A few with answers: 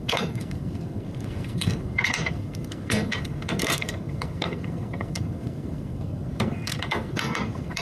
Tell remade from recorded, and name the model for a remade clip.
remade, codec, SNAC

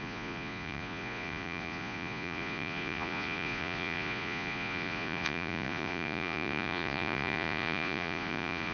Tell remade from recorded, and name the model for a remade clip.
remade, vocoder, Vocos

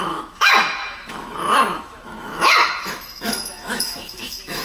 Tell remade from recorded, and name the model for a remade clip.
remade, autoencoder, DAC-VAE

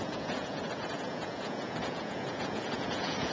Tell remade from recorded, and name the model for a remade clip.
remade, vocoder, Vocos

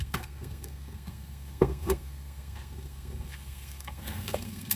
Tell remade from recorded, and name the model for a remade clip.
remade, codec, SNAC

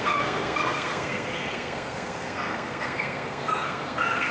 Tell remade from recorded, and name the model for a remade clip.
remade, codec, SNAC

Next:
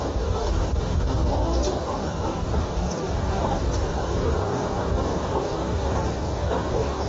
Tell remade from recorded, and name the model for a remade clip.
remade, codec, DAC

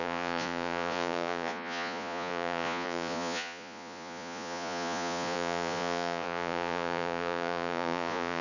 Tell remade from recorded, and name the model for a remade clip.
remade, vocoder, Vocos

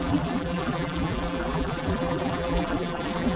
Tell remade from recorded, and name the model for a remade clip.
remade, vocoder, BigVGAN v2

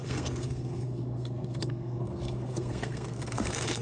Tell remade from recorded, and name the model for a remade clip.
remade, codec, SNAC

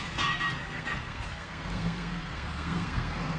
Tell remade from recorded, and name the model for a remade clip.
remade, codec, SNAC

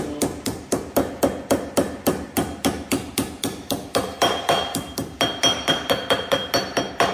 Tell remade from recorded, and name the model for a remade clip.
recorded